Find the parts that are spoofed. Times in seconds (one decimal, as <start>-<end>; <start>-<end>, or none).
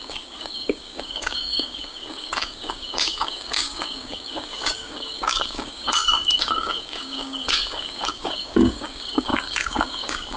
0.0-10.4